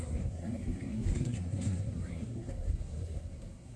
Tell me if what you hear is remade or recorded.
remade